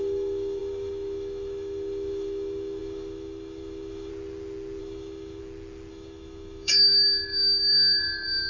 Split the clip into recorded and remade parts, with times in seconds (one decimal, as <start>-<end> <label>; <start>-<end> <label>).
0.0-4.1 remade; 4.1-4.8 recorded; 4.8-5.4 remade; 5.4-5.9 recorded; 5.9-8.5 remade